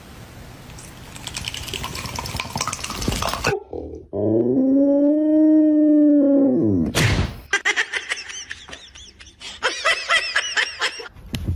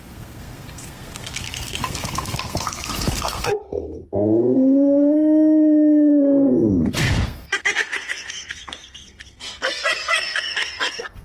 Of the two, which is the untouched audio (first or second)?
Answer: first